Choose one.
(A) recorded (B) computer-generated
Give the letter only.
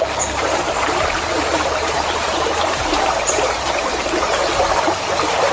B